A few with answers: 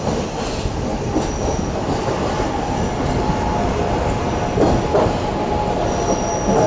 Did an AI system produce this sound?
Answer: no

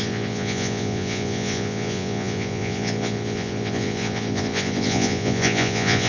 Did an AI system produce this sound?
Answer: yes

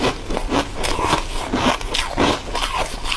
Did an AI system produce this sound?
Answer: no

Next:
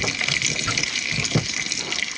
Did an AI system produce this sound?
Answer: no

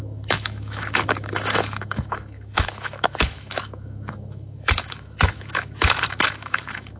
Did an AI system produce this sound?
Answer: yes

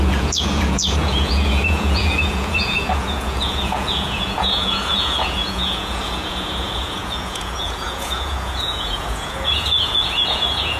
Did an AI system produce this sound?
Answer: yes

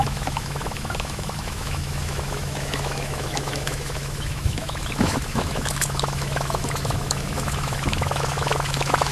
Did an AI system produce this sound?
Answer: yes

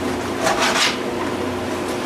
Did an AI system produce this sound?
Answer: no